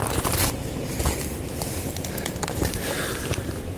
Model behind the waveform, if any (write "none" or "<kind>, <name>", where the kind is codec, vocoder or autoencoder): none